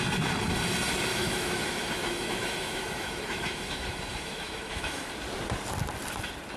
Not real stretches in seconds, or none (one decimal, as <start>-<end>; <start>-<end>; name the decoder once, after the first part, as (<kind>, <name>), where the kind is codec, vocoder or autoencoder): 1.1-5.1 (autoencoder, DAC-VAE)